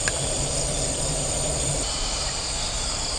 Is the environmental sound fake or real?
fake